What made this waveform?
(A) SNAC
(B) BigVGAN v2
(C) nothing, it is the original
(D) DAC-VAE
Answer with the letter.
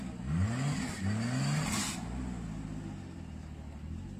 C